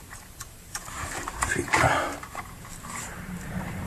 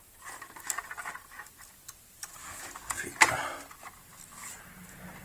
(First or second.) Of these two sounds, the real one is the second